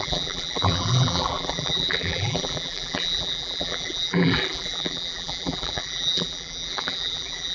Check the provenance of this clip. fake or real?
fake